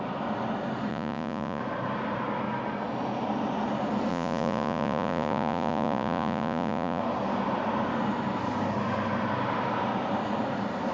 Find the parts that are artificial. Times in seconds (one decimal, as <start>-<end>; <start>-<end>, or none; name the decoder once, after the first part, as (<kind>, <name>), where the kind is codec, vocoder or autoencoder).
0.9-1.6 (vocoder, Vocos); 4.1-7.0